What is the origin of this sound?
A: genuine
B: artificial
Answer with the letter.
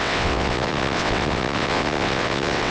B